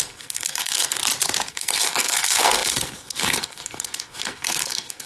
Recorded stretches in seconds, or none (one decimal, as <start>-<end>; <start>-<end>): 1.0-1.5